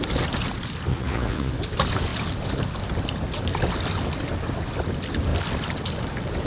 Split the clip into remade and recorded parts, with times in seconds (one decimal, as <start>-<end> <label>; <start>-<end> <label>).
0.0-0.9 recorded; 0.9-1.5 remade; 1.5-6.5 recorded